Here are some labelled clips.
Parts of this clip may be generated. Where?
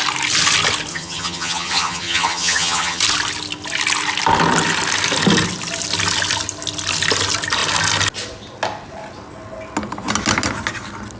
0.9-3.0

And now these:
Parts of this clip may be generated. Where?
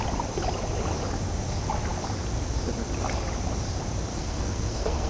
4.1-5.1